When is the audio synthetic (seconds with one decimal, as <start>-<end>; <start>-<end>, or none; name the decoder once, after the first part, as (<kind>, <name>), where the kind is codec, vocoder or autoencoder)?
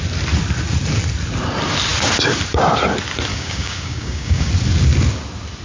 3.3-4.5 (codec, DAC)